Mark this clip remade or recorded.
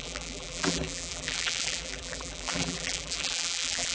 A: remade